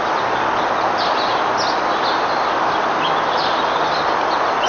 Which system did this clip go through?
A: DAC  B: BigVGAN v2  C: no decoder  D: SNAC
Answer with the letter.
C